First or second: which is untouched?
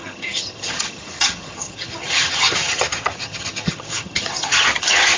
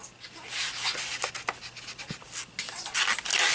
second